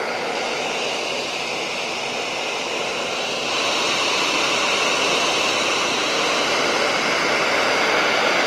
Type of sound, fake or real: real